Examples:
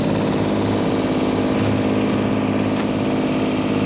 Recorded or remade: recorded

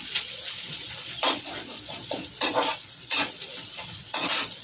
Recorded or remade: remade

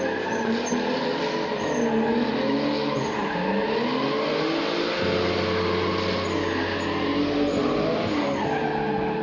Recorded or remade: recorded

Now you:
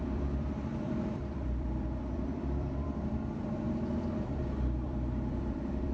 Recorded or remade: remade